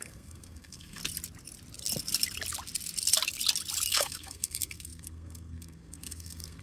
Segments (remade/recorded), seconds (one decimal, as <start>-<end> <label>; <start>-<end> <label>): 0.0-1.0 remade; 1.0-3.9 recorded; 3.9-6.6 remade